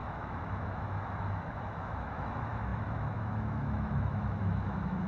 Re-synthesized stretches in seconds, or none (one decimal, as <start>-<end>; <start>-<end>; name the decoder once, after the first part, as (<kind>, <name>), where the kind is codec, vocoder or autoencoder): 0.0-5.1 (autoencoder, DAC-VAE)